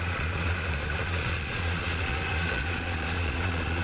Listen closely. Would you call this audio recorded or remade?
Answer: remade